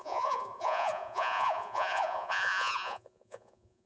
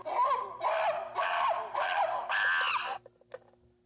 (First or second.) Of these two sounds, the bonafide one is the second